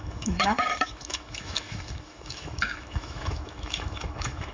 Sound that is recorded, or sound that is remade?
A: remade